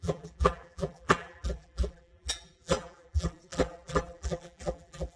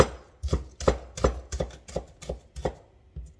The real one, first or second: second